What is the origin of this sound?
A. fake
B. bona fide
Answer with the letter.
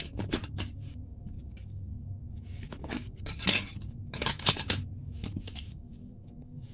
A